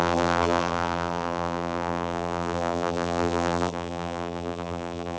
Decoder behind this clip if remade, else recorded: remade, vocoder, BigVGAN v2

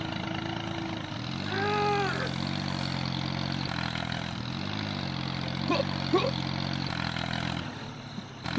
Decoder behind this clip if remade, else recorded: recorded